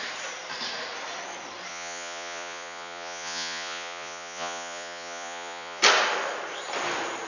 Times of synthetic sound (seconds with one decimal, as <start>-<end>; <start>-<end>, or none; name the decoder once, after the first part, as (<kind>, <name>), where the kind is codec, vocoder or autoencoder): 1.7-5.8 (vocoder, Vocos)